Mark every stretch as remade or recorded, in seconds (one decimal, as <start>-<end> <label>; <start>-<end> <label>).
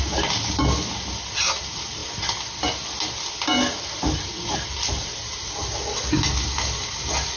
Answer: 0.0-7.4 recorded